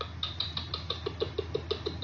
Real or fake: real